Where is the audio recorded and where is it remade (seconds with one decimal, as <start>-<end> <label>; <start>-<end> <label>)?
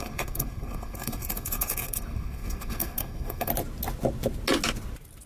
0.0-3.5 remade; 3.5-5.3 recorded